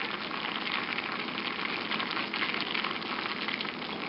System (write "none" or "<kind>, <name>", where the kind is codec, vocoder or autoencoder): none